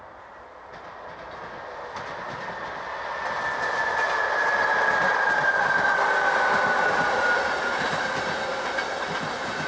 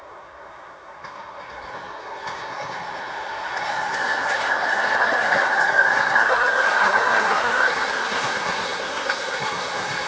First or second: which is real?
first